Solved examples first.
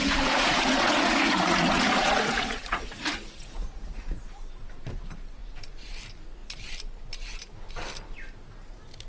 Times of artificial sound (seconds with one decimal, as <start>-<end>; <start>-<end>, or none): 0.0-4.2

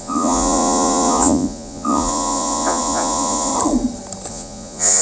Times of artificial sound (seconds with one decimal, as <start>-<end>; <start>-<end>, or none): 0.0-3.5; 4.3-5.0

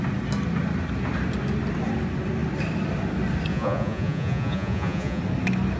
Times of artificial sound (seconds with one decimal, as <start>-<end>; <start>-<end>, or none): 3.5-5.2

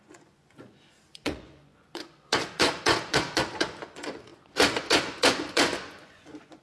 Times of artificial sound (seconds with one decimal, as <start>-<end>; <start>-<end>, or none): 0.0-6.6